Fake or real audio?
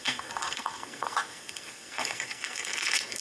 fake